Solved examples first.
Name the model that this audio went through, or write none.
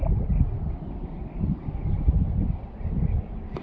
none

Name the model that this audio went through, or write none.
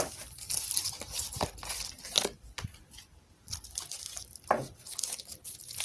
none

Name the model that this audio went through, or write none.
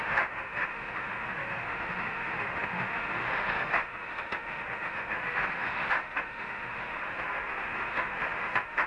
autoencoder, DAC-VAE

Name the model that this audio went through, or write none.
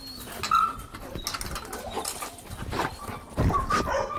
none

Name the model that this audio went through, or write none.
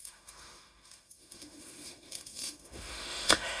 autoencoder, DAC-VAE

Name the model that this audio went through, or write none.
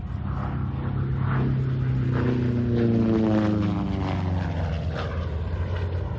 none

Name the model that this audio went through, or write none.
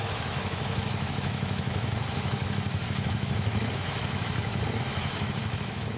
autoencoder, DAC-VAE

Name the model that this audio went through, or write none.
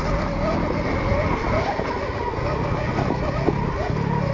none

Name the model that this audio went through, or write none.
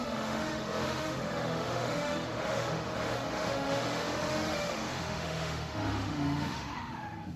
autoencoder, DAC-VAE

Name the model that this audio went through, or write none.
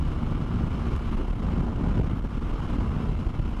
none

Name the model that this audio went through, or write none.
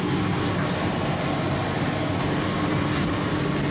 none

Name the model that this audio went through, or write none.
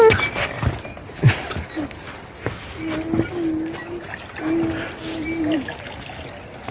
none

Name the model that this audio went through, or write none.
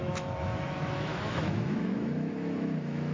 autoencoder, DAC-VAE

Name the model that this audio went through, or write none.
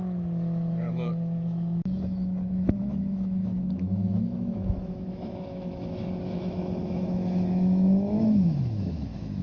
autoencoder, DAC-VAE